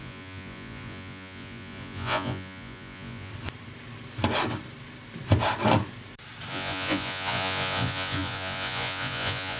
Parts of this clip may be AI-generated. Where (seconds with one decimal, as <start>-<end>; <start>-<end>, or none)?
0.0-3.3; 6.5-9.6